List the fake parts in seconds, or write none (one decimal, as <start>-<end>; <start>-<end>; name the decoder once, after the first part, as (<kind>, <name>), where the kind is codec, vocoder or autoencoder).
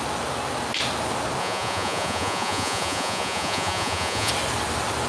1.4-4.3 (vocoder, Vocos)